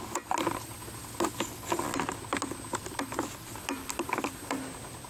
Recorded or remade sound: recorded